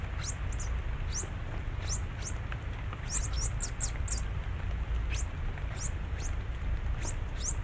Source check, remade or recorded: recorded